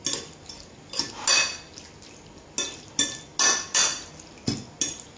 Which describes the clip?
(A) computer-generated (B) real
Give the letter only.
B